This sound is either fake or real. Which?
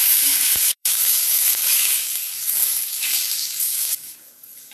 fake